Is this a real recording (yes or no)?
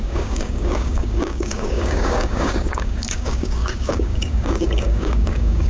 no